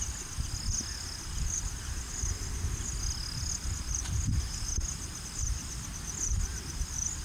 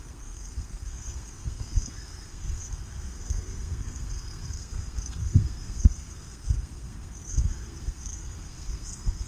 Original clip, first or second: first